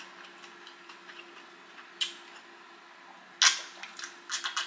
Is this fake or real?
real